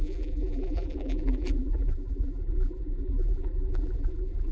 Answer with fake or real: fake